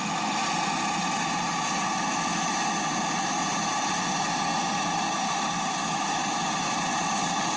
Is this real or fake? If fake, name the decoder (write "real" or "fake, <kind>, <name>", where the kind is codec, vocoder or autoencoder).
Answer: real